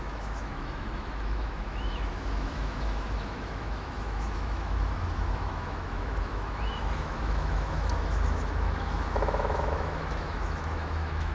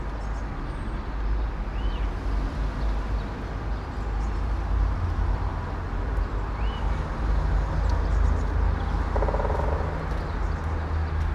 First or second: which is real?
second